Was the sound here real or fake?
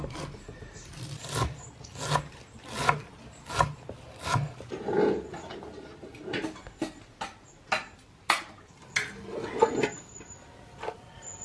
real